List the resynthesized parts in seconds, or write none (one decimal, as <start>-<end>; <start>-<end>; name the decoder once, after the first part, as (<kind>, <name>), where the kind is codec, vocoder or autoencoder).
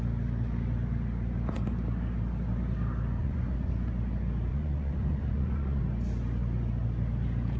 3.2-3.7 (vocoder, Vocos); 4.5-5.8